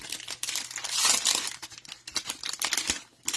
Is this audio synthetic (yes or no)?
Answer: no